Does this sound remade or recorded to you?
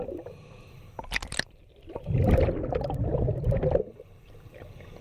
recorded